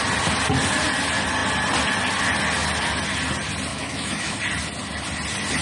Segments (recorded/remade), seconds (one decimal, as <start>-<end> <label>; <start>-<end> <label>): 0.0-3.7 recorded; 3.7-4.4 remade; 4.4-5.6 recorded